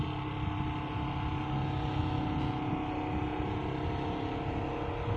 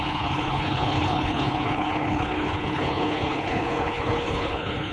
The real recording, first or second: first